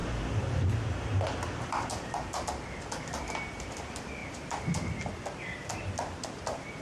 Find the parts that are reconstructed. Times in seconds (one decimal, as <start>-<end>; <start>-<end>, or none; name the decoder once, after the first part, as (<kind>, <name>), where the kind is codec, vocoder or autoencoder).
0.0-0.7 (vocoder, BigVGAN v2)